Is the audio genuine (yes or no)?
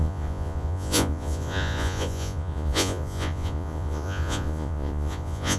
no